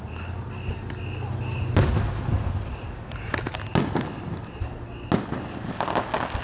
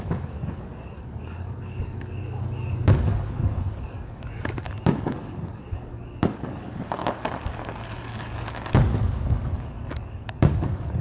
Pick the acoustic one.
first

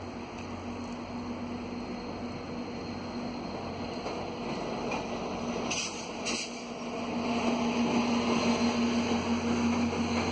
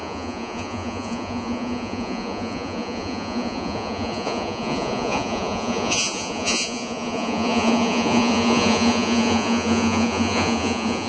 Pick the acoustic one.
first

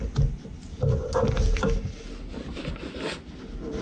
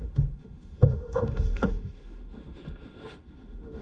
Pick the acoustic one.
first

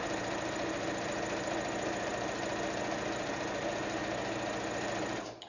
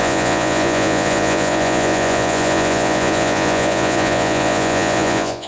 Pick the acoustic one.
first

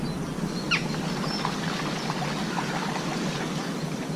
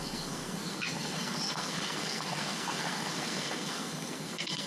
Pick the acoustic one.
first